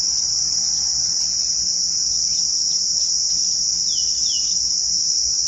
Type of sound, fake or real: real